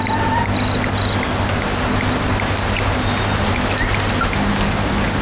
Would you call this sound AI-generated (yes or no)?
no